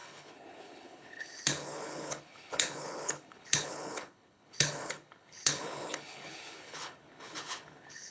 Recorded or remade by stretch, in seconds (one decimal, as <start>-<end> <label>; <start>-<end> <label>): 0.0-8.1 remade